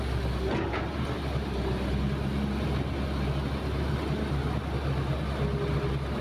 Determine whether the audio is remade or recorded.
recorded